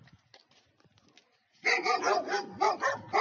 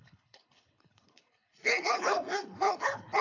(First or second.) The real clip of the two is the first